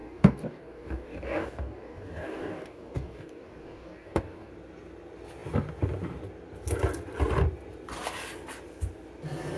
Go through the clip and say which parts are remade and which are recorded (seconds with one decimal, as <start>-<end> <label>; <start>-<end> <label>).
0.0-4.5 remade; 4.5-9.6 recorded